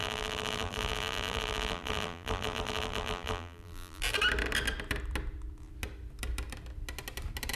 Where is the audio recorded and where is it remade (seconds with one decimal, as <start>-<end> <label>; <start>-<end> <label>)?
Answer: 0.0-4.0 remade; 4.0-7.6 recorded